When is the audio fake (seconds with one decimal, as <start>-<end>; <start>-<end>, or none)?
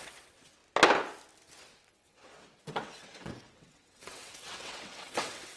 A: 0.0-0.6; 1.9-5.6